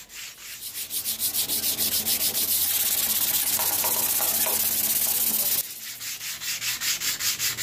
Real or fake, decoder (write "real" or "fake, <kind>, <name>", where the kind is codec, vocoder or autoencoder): real